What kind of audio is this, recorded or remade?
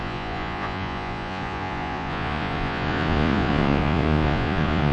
remade